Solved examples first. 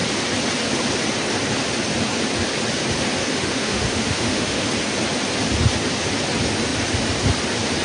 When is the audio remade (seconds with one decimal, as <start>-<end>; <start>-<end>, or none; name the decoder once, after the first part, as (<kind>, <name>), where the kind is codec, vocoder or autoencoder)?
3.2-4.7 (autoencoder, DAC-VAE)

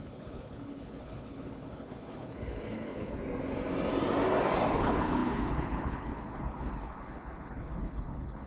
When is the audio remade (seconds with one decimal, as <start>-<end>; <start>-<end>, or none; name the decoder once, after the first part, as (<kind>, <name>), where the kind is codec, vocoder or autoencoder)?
0.0-3.2 (codec, HILCodec); 4.7-8.5

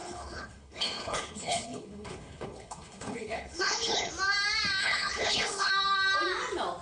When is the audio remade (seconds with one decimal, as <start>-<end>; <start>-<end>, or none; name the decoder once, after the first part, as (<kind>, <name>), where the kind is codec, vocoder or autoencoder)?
0.0-4.1 (codec, HILCodec); 4.8-5.7

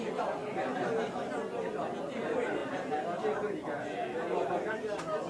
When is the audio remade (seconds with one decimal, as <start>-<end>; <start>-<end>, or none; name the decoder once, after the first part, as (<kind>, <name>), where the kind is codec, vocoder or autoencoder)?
none

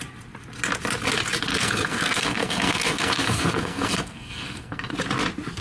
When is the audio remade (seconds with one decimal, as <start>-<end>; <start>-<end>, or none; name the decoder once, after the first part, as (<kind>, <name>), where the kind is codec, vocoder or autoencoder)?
1.5-4.9 (codec, SNAC)

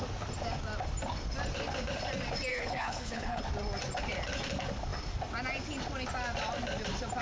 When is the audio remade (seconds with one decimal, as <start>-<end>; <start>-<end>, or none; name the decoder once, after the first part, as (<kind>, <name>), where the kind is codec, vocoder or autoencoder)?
2.5-3.4 (codec, HILCodec)

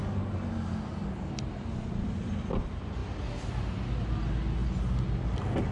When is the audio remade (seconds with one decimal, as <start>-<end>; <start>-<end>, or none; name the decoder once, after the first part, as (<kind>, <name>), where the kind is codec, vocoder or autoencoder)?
none